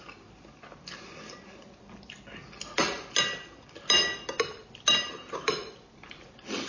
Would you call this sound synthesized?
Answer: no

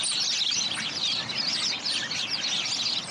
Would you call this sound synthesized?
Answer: no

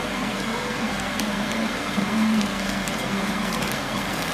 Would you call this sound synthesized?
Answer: yes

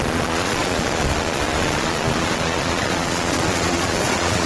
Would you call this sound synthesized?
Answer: yes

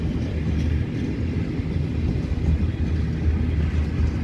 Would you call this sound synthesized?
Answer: no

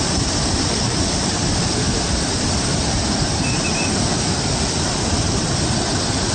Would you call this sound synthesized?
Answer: yes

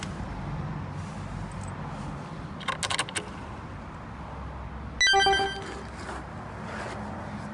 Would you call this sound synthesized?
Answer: no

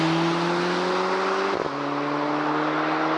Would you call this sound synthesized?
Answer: no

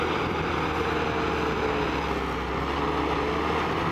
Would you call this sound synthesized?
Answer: no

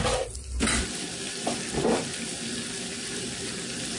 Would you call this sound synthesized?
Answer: no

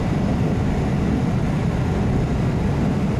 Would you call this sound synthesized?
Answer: no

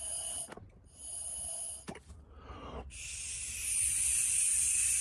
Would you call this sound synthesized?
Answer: no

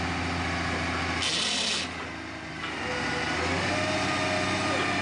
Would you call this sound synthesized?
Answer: no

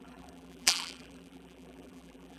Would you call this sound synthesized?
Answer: yes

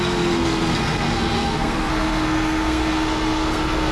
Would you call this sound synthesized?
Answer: yes